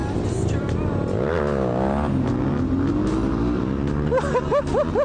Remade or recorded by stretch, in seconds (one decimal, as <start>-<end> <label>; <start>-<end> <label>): 0.0-0.9 remade; 0.9-5.0 recorded